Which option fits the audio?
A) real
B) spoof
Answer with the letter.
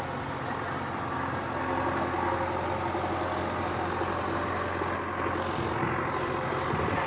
A